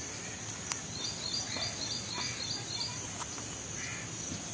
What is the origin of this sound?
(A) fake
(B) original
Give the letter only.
B